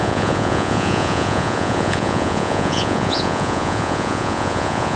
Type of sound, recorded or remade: remade